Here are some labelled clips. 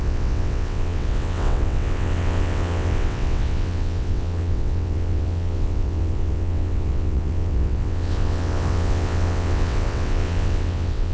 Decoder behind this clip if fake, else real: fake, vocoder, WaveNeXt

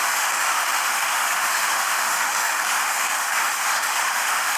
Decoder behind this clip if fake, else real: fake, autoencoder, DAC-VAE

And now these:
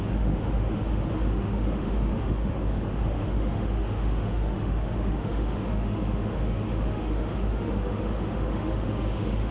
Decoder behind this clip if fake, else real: fake, autoencoder, DAC-VAE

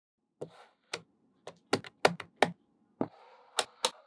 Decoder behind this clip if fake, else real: real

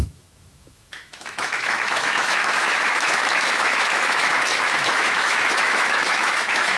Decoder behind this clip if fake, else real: fake, autoencoder, DAC-VAE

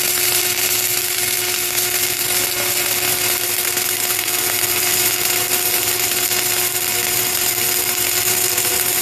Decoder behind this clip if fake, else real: real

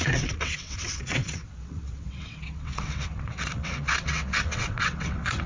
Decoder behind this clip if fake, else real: fake, vocoder, WaveNeXt